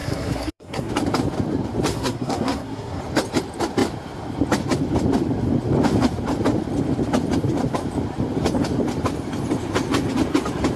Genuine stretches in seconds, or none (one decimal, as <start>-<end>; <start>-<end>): 0.9-1.9; 3.0-10.8